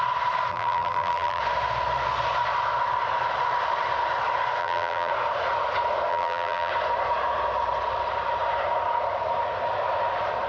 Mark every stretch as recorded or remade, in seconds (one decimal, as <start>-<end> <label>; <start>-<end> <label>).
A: 0.0-0.5 recorded; 0.5-1.4 remade; 1.4-4.6 recorded; 4.6-5.1 remade; 5.1-6.1 recorded; 6.1-6.7 remade; 6.7-10.5 recorded